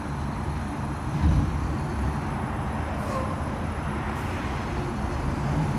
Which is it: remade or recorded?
recorded